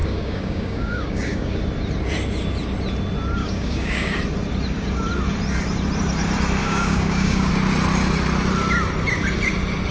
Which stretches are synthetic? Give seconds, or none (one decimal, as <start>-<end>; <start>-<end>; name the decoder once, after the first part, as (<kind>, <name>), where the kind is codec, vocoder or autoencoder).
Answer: 0.0-1.6 (codec, DAC); 3.4-4.2; 6.6-7.5